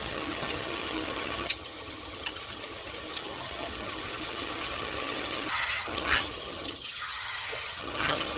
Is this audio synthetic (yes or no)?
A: yes